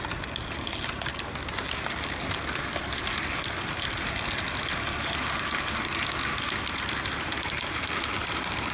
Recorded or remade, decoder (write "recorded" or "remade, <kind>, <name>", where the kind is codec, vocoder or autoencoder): recorded